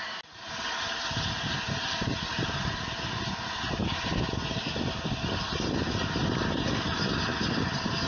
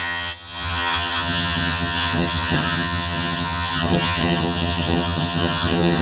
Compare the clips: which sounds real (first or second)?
first